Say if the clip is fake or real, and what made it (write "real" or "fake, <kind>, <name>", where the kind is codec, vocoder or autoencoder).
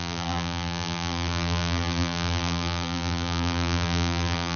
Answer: fake, vocoder, BigVGAN v2